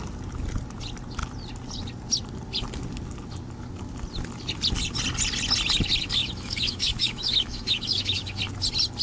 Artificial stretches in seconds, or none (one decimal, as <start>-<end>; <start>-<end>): 6.2-8.4